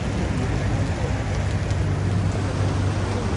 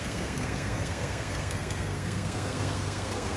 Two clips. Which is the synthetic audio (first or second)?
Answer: second